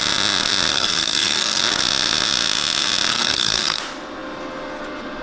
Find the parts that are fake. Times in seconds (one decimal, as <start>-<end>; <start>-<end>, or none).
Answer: 0.7-1.6; 3.1-3.8